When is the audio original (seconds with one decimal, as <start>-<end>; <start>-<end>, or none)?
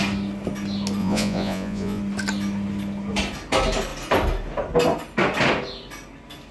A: 0.0-1.0; 2.0-6.5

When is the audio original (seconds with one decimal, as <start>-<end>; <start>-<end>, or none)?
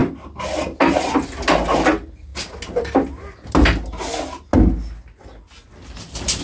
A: 0.0-6.4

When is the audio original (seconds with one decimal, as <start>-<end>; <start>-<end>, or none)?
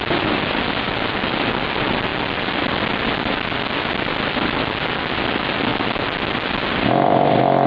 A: 0.0-7.7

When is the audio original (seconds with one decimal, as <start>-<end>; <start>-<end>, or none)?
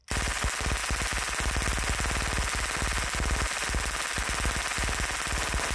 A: 0.0-5.7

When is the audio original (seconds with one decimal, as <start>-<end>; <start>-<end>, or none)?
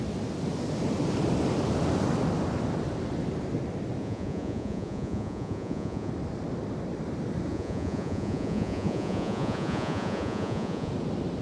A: 0.0-4.0; 6.1-7.5; 10.9-11.4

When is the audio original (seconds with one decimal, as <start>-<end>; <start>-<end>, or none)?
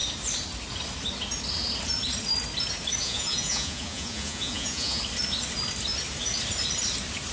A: 0.0-3.0; 5.0-7.3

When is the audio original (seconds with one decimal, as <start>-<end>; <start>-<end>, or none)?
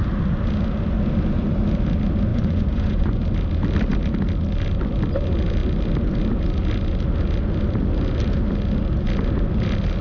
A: 0.0-2.3; 3.2-10.0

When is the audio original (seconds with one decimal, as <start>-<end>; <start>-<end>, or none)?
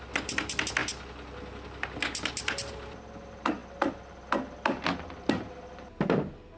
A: 0.0-6.6